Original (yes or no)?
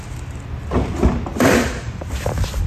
yes